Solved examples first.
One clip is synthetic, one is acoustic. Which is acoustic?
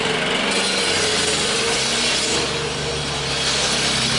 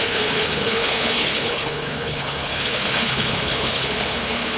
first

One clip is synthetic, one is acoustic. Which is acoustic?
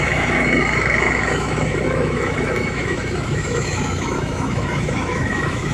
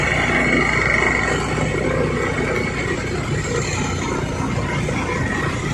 second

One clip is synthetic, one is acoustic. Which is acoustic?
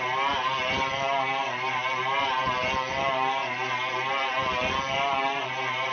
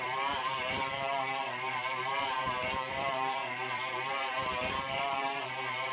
first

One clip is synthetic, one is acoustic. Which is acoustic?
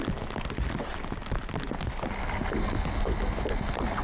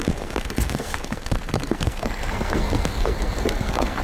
first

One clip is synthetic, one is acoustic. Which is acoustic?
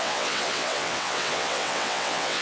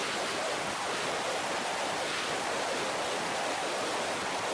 second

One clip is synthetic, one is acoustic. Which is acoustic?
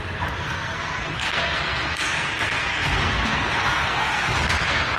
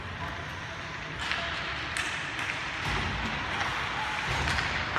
second